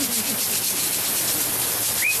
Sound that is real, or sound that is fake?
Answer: real